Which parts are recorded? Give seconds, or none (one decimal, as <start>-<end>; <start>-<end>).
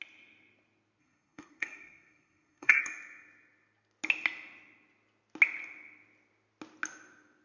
0.0-1.0; 2.8-7.4